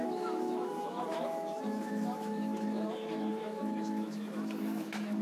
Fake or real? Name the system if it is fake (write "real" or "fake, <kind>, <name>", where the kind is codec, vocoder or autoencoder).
fake, autoencoder, DAC-VAE